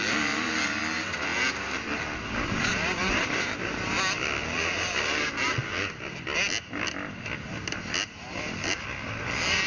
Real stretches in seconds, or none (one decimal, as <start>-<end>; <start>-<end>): 0.0-3.0; 3.9-9.7